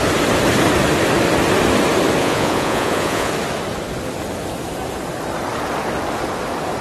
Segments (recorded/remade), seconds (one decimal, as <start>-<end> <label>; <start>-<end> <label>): 0.0-2.2 recorded; 2.2-3.3 remade; 3.3-6.8 recorded